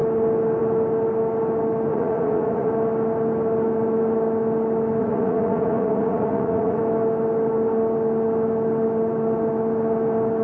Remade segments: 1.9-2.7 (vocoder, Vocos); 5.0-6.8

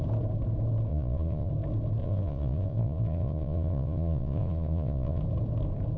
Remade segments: 0.9-1.5 (vocoder, Vocos); 2.0-5.2

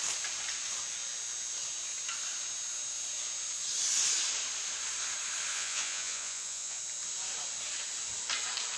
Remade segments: 5.5-6.8 (vocoder, Vocos)

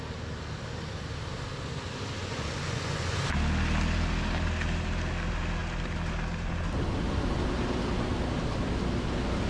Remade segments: 2.2-3.1 (vocoder, Vocos)

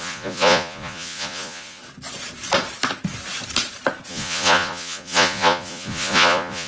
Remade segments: 0.0-1.8 (vocoder, Vocos); 4.1-6.7

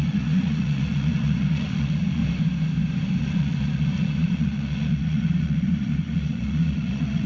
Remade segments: 0.0-2.2 (vocoder, Vocos); 3.2-7.3

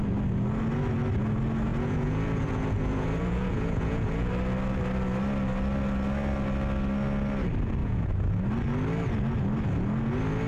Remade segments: 1.7-4.3 (vocoder, Vocos); 7.8-8.3